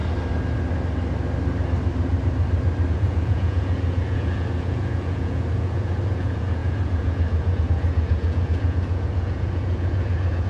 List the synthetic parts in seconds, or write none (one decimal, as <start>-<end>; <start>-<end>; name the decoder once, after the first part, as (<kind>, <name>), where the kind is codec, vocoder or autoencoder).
2.9-10.5 (vocoder, Vocos)